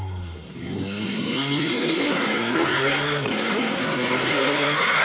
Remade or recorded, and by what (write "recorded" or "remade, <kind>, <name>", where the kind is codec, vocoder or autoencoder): remade, codec, SNAC